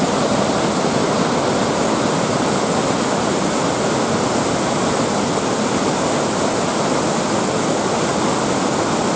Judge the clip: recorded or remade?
recorded